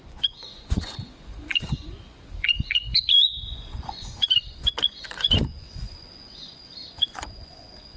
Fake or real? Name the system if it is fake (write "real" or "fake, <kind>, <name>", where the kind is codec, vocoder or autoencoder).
fake, vocoder, Vocos